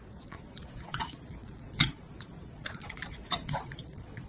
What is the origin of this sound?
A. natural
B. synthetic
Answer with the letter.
B